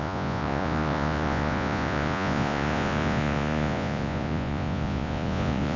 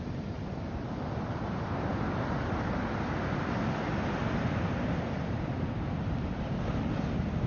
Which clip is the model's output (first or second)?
first